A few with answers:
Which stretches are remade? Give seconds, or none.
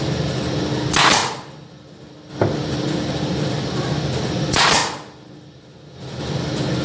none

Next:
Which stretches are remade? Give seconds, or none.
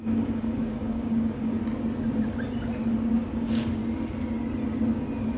0.0-1.6 (codec, DAC); 3.1-3.8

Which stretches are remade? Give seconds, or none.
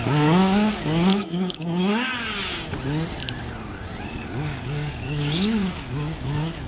0.0-2.1 (codec, DAC); 4.1-6.7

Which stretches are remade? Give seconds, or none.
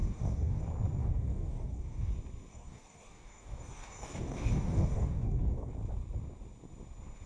0.0-0.6 (codec, DAC); 1.0-2.1; 2.5-5.7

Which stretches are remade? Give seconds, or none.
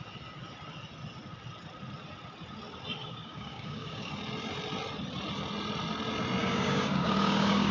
3.0-4.1 (codec, DAC); 6.4-7.7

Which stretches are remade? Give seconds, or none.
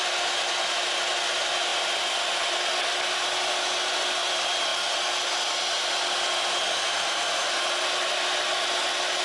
none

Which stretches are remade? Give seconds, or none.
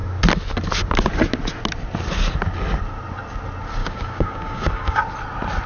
3.8-5.0 (codec, DAC)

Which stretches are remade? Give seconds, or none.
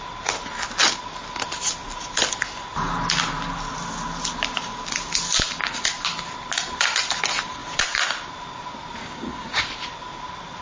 9.0-9.6 (codec, DAC)